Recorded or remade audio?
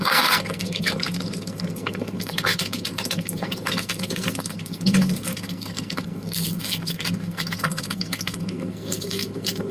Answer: remade